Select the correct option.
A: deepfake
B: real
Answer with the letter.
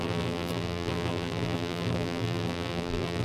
A